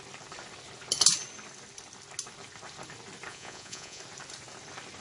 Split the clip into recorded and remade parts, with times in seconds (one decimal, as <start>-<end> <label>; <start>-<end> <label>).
0.0-3.3 recorded; 3.3-4.0 remade; 4.0-5.0 recorded